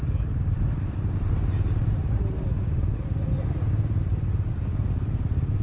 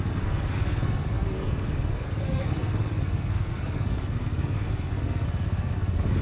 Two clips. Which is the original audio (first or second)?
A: first